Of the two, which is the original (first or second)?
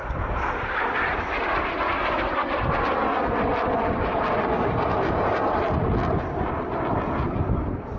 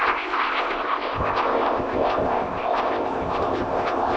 first